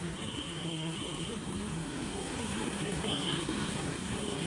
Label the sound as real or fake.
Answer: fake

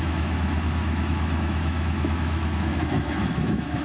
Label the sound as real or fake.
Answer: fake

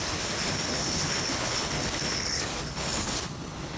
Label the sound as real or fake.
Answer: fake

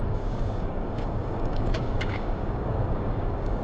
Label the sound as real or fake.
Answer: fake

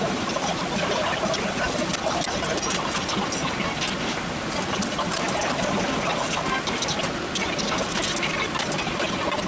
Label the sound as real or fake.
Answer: real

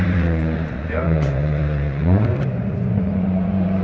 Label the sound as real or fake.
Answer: fake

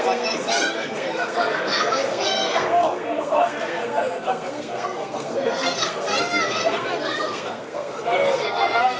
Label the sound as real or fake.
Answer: fake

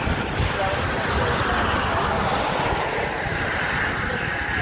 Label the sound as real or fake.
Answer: real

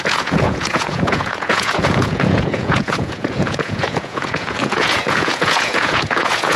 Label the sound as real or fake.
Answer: fake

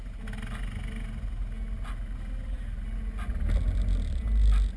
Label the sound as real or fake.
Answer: real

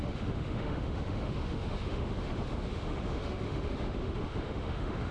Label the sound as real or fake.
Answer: fake